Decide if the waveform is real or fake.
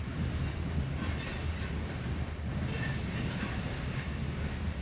real